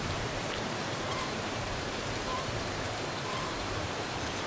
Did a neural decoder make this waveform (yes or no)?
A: yes